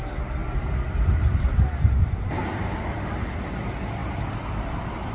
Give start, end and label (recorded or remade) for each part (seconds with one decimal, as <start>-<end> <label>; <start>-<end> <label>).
0.0-0.4 recorded; 0.4-3.5 remade; 3.5-4.0 recorded; 4.0-5.1 remade